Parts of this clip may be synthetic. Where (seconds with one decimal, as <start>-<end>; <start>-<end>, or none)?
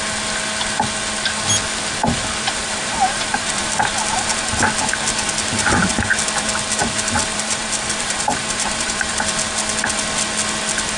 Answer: 2.6-4.6; 7.3-9.1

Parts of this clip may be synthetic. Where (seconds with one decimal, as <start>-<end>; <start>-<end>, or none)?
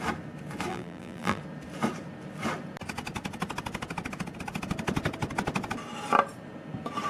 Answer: 0.7-1.4